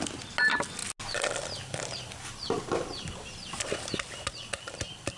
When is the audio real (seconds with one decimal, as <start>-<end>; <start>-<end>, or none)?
0.0-5.2